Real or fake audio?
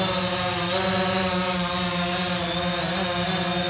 real